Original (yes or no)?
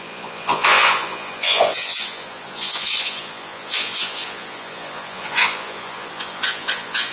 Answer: no